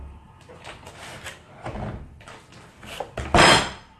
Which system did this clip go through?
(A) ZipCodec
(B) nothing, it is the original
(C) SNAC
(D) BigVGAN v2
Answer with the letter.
B